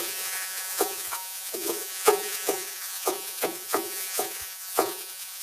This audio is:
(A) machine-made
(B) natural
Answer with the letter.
A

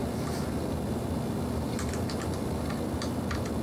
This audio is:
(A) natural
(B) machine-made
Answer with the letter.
A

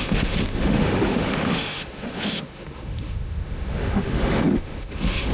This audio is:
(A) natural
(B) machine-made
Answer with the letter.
B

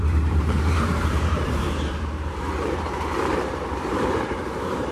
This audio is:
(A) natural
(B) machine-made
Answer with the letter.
B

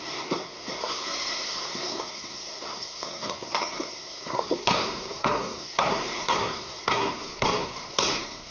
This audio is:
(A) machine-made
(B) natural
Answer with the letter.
A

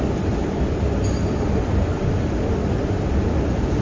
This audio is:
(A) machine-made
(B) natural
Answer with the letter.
A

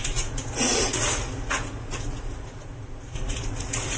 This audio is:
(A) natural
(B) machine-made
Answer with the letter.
B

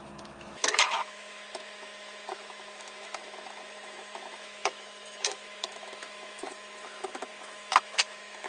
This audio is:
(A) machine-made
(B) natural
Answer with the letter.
A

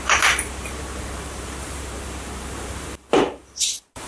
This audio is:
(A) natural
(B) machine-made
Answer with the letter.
B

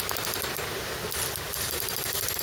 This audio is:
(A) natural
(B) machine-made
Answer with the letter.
A